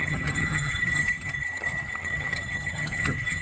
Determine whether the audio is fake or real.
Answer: fake